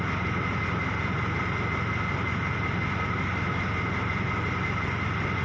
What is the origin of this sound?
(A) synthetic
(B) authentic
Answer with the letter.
B